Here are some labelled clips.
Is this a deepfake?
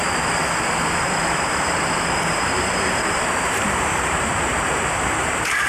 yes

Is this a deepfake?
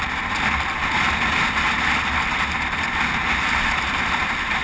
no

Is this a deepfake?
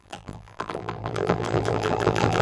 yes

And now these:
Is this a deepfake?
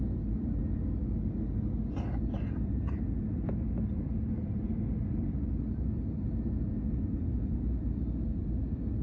no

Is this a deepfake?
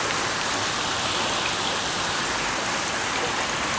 no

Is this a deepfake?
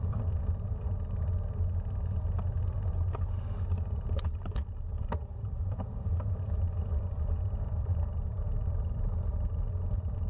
yes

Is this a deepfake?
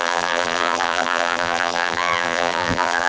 yes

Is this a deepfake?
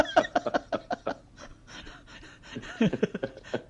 no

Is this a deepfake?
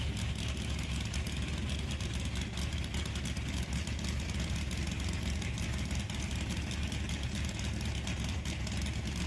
no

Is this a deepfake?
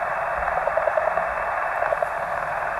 yes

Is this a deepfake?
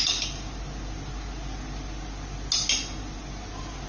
no